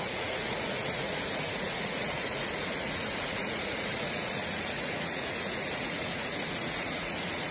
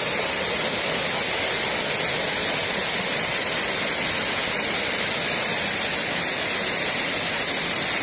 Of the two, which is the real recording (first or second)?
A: second